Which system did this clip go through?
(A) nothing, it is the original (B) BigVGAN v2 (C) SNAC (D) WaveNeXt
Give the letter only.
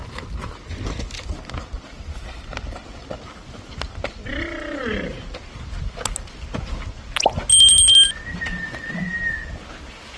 A